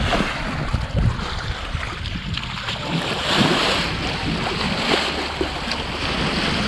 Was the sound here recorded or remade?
recorded